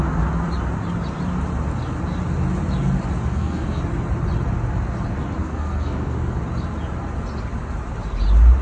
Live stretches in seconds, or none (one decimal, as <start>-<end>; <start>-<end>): 0.0-3.3; 3.8-5.4; 6.4-8.6